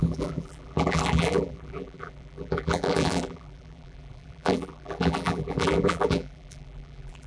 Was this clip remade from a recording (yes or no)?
yes